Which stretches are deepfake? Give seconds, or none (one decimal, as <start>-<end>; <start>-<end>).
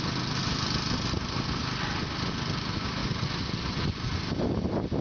3.0-4.6